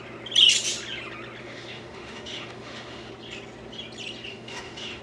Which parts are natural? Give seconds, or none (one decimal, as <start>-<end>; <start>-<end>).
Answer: 0.0-1.4; 3.1-4.3